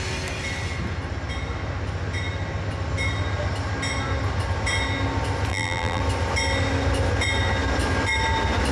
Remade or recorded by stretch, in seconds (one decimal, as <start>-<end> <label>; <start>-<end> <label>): 0.0-5.5 recorded; 5.5-6.0 remade; 6.0-8.7 recorded